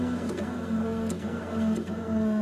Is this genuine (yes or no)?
no